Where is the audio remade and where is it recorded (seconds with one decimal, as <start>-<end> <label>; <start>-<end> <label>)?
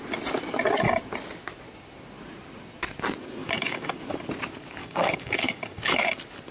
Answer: 0.0-3.4 recorded; 3.4-4.0 remade; 4.0-4.8 recorded; 4.8-6.1 remade; 6.1-6.5 recorded